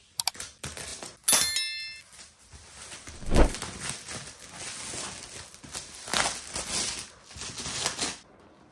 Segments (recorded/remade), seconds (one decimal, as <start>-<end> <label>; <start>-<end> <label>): 0.0-8.7 recorded